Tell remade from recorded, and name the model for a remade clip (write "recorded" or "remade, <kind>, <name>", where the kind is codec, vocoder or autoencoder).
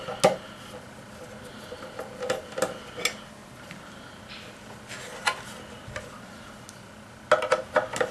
recorded